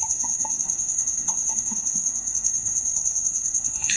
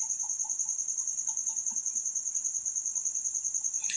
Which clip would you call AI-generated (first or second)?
first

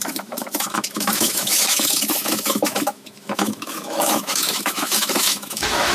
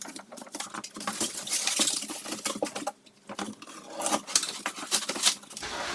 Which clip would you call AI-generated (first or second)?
first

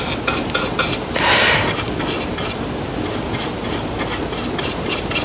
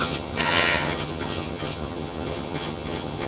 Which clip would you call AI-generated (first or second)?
second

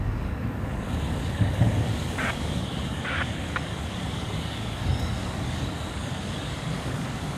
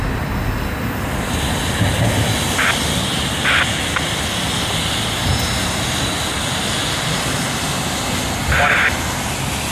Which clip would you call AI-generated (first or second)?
first